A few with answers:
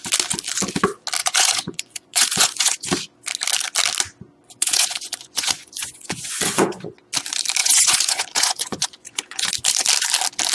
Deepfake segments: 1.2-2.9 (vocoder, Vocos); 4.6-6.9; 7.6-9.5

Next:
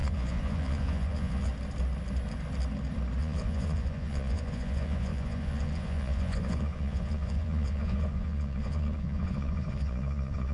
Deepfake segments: 0.0-1.5 (vocoder, Vocos); 3.2-10.5

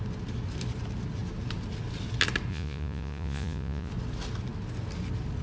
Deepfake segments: 2.5-3.9 (vocoder, Vocos)

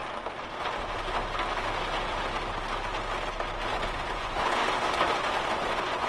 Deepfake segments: 3.7-4.6 (vocoder, Vocos); 5.5-6.1

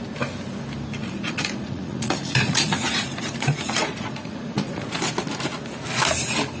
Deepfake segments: 1.0-5.0 (vocoder, Vocos)

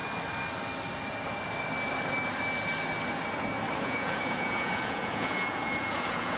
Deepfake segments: 3.8-6.4 (vocoder, Vocos)

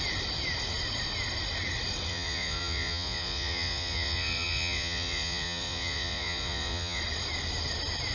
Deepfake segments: 2.1-7.0 (vocoder, Vocos)